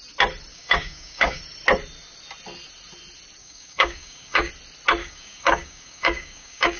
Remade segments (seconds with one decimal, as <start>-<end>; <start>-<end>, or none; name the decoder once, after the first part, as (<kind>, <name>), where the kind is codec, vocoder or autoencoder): 0.5-1.4 (codec, DAC); 3.4-4.5; 5.0-6.8